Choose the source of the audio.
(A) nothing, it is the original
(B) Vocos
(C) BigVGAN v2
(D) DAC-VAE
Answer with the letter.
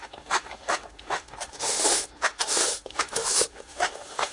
D